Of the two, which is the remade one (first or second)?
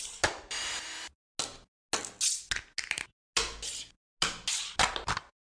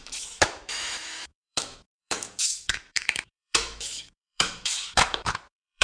second